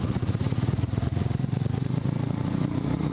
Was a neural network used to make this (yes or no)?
yes